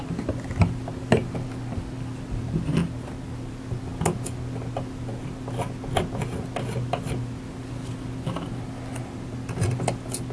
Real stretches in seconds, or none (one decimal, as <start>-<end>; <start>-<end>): 0.0-10.3